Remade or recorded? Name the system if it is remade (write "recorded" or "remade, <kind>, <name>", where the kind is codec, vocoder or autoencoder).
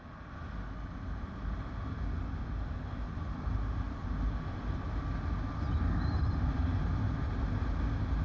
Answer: recorded